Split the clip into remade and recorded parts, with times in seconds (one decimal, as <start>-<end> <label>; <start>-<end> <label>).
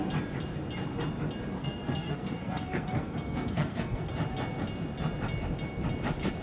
0.0-1.6 recorded; 1.6-4.1 remade; 4.1-6.4 recorded